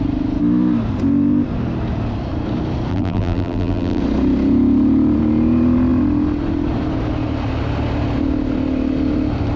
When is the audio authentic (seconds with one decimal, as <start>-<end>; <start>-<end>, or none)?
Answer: 0.0-2.9; 4.0-9.6